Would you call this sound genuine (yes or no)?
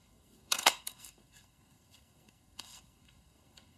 no